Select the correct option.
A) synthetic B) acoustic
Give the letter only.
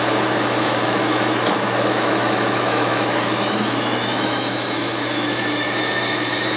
A